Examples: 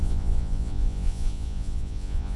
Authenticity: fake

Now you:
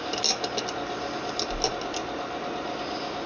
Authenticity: real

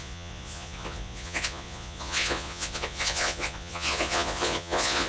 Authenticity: fake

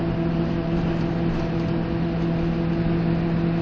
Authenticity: real